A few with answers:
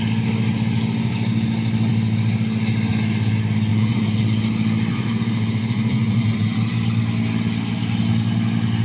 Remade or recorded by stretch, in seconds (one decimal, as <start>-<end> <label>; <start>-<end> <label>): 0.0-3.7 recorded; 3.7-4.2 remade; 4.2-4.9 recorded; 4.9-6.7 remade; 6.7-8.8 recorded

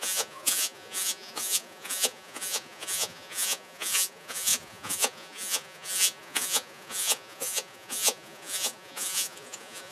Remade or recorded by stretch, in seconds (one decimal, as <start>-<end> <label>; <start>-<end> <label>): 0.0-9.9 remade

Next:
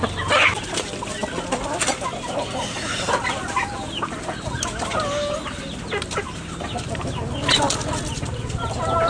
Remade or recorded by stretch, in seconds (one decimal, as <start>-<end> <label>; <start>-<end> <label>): 0.0-9.1 recorded